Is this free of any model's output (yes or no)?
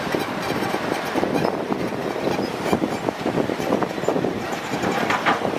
no